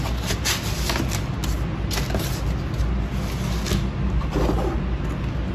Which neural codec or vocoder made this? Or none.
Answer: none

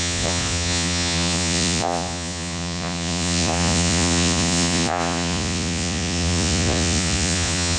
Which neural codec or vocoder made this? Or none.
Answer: vocoder, Vocos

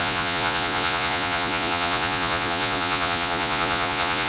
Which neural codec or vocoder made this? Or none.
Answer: vocoder, Vocos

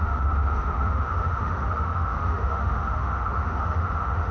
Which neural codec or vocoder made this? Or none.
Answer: autoencoder, DAC-VAE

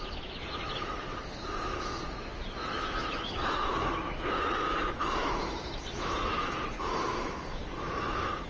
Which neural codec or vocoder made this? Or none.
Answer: autoencoder, DAC-VAE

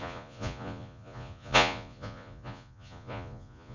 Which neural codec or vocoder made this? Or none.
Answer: vocoder, Vocos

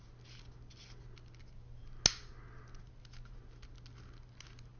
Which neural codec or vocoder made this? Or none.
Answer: none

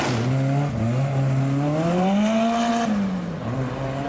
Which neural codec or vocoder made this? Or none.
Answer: none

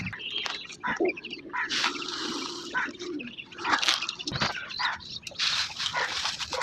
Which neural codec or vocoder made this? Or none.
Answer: none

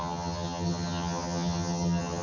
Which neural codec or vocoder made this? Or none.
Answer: vocoder, HiFi-GAN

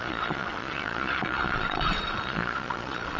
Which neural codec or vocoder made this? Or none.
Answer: vocoder, Vocos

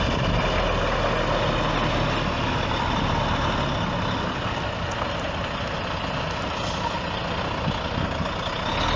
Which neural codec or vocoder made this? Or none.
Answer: none